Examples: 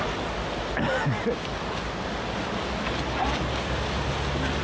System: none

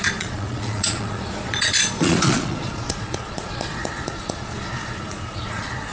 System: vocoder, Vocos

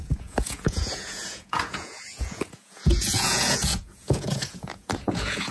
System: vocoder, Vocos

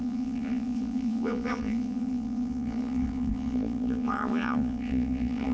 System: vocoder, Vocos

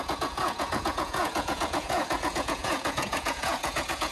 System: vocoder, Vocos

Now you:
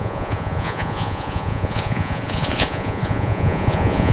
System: vocoder, Vocos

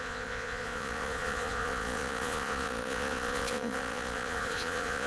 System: vocoder, Vocos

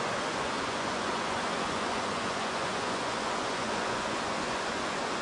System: vocoder, Vocos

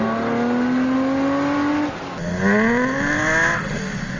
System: none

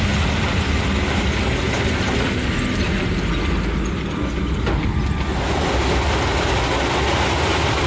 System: none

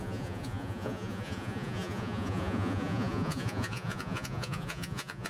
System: vocoder, Vocos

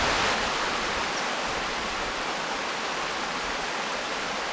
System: none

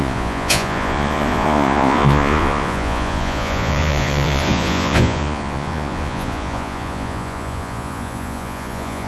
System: vocoder, Vocos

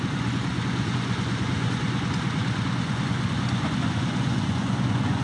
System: vocoder, Vocos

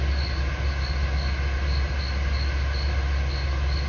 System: none